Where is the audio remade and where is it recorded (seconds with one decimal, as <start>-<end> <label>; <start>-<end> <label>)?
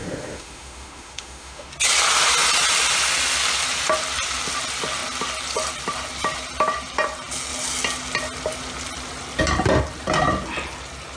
0.0-1.7 remade; 1.7-11.2 recorded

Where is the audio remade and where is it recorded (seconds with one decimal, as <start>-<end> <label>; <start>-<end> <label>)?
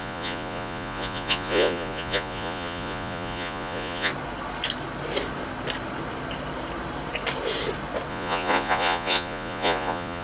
0.0-4.1 remade; 4.1-8.1 recorded; 8.1-10.2 remade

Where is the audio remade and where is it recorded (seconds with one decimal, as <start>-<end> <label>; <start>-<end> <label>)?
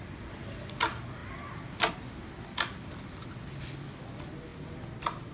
0.0-5.3 recorded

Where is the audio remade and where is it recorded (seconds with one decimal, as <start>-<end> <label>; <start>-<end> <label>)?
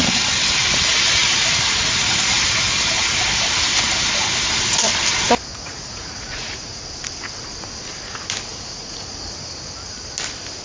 0.0-5.5 recorded; 5.5-6.9 remade; 6.9-8.5 recorded; 8.5-9.2 remade; 9.2-10.6 recorded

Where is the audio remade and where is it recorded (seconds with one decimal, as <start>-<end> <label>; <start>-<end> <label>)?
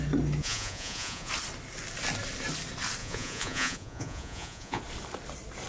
0.0-0.4 recorded; 0.4-1.3 remade; 1.3-3.0 recorded; 3.0-4.8 remade; 4.8-5.7 recorded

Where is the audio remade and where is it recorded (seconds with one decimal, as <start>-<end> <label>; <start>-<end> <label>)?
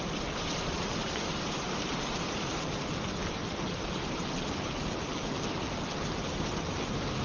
0.0-1.9 remade; 1.9-3.7 recorded; 3.7-5.1 remade; 5.1-6.2 recorded; 6.2-7.2 remade